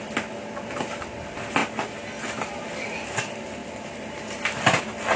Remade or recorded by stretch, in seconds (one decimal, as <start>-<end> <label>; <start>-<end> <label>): 0.0-5.2 recorded